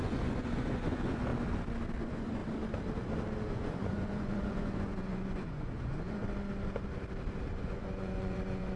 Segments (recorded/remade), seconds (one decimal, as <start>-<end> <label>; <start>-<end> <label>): 0.0-1.3 remade; 1.3-2.0 recorded; 2.0-2.4 remade; 2.4-3.5 recorded; 3.5-6.2 remade; 6.2-7.5 recorded; 7.5-8.8 remade